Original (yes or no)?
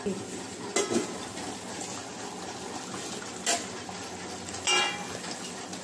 yes